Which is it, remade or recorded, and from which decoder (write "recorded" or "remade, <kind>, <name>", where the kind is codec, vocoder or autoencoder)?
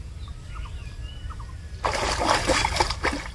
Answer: recorded